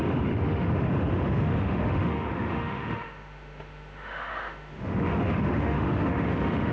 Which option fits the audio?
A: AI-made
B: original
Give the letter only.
A